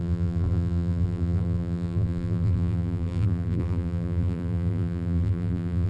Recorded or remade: remade